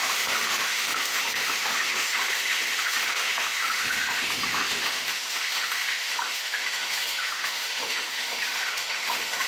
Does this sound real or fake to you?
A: fake